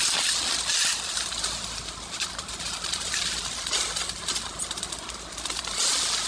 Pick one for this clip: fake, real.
real